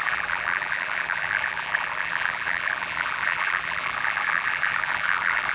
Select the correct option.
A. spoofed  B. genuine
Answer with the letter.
A